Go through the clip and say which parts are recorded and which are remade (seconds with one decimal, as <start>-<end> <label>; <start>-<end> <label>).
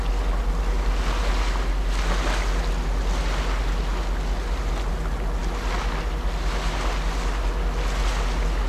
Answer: 0.0-8.7 recorded